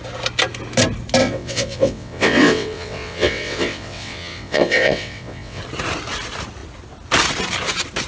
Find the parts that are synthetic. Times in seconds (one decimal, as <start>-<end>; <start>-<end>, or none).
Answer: 1.2-5.6